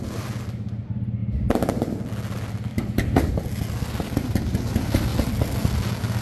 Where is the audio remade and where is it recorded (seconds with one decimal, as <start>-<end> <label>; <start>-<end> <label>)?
0.0-6.2 recorded